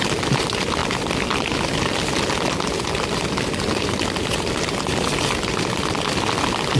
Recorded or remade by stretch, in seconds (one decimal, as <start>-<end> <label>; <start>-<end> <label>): 0.0-6.8 recorded